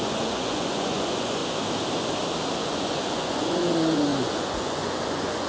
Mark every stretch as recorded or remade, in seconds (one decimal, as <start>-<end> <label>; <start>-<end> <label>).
0.0-1.4 remade; 1.4-2.6 recorded; 2.6-5.5 remade